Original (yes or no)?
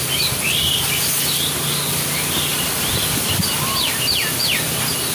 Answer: yes